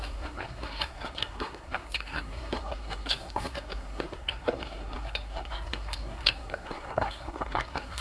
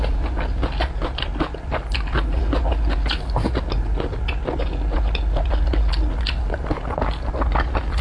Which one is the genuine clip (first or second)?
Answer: second